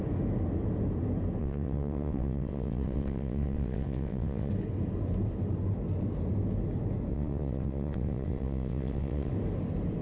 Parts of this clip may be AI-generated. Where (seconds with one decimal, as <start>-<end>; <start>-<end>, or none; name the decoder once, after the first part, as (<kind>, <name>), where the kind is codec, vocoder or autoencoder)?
1.4-4.5 (vocoder, WaveNeXt); 7.1-9.3